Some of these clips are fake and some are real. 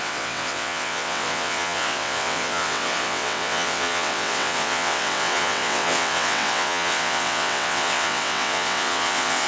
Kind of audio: fake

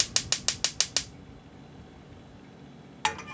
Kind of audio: real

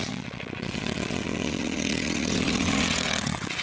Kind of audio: fake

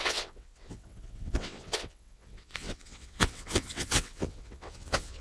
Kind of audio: fake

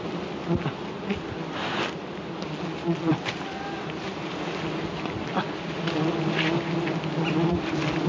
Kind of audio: real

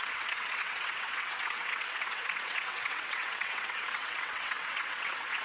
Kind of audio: fake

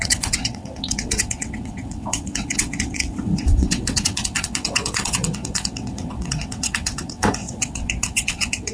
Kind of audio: fake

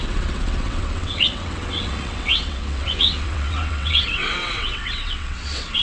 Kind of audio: fake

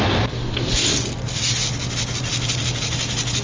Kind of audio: real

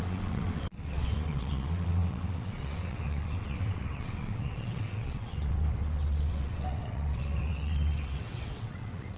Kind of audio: fake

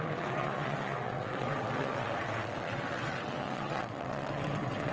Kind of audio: fake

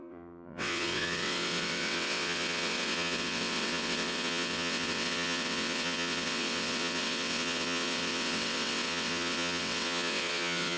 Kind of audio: fake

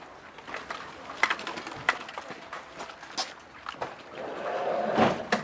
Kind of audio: real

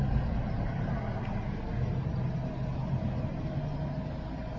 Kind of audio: real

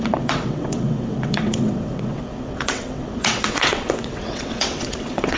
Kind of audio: fake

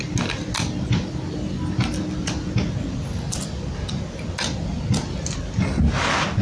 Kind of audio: real